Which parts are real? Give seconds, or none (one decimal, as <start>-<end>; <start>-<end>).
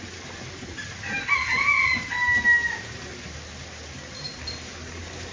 0.0-5.3